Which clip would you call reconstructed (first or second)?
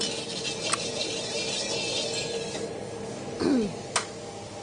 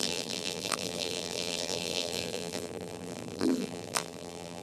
second